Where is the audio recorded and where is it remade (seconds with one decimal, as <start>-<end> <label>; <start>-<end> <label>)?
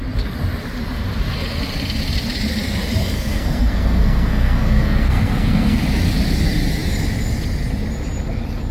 0.0-3.0 recorded; 3.0-5.8 remade; 5.8-8.7 recorded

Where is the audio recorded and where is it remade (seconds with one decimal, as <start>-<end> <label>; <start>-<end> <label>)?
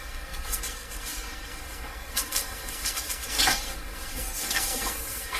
0.0-5.4 remade